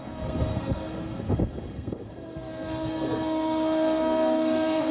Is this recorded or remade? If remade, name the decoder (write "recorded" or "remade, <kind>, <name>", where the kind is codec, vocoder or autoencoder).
remade, codec, SNAC